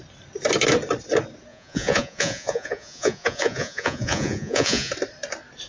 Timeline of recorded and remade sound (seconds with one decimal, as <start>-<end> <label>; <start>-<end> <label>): 0.0-1.5 recorded; 1.5-4.9 remade; 4.9-5.7 recorded